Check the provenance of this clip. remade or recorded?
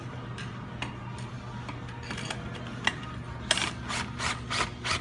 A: recorded